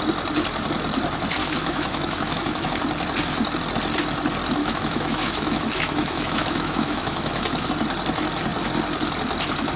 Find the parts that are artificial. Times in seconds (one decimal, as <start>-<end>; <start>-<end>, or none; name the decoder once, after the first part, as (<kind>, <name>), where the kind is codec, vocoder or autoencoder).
1.4-2.7 (autoencoder, DAC-VAE); 4.6-7.7